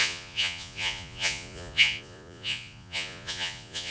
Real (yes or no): no